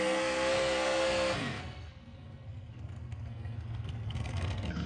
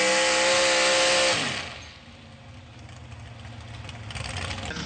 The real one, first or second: second